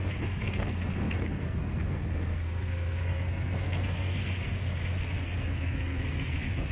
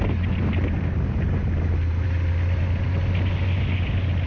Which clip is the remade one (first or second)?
first